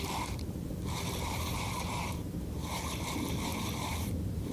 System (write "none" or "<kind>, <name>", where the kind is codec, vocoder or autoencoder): vocoder, BigVGAN v2